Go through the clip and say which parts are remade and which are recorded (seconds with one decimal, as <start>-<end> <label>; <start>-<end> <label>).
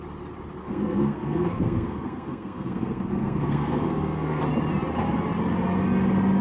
0.0-0.6 recorded; 0.6-4.4 remade; 4.4-6.4 recorded